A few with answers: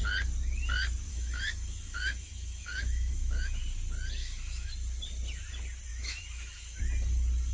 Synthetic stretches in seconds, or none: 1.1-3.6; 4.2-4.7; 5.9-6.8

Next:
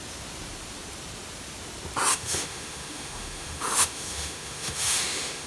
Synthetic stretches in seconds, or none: 2.1-5.5

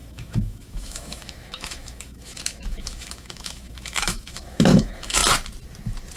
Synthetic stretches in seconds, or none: 0.0-5.2

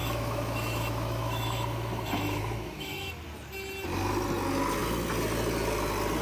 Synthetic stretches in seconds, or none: 0.0-3.1